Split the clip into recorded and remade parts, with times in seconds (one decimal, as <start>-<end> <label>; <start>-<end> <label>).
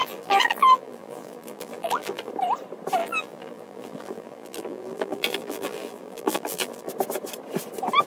0.0-2.3 remade; 2.3-3.0 recorded; 3.0-6.9 remade; 6.9-8.1 recorded